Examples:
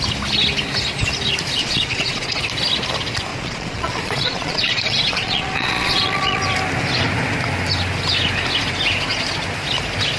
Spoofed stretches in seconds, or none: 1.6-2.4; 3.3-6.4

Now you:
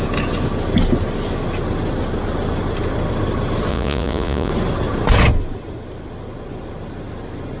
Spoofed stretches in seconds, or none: 3.7-4.5

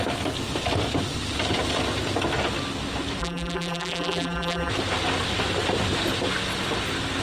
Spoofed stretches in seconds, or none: 3.2-4.7

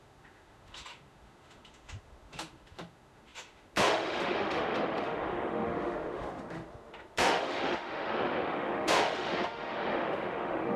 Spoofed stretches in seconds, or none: 0.0-10.8